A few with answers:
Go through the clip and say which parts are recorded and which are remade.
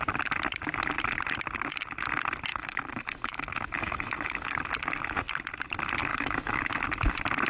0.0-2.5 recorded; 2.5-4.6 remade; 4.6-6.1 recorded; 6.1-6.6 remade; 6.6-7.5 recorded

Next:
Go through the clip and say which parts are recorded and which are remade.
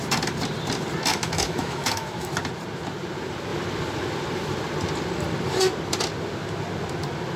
0.0-1.1 recorded; 1.1-2.3 remade; 2.3-7.4 recorded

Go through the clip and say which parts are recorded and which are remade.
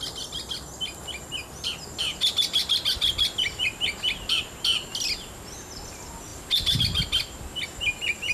0.0-8.3 recorded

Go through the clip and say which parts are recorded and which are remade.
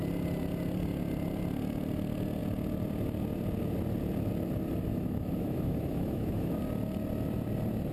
0.0-4.9 recorded; 4.9-6.6 remade; 6.6-7.9 recorded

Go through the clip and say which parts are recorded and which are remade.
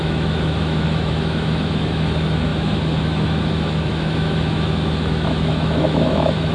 0.0-6.5 remade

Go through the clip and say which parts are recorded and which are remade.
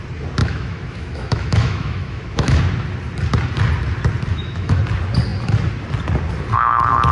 0.0-0.4 recorded; 0.4-2.6 remade; 2.6-4.3 recorded; 4.3-4.8 remade; 4.8-7.1 recorded